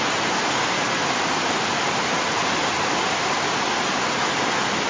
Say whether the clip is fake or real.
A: real